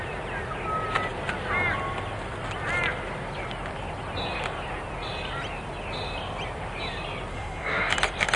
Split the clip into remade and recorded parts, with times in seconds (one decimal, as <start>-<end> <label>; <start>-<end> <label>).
0.0-7.3 recorded; 7.3-7.9 remade; 7.9-8.4 recorded